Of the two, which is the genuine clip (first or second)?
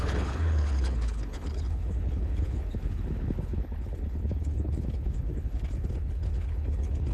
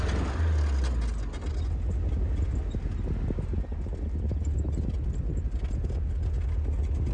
second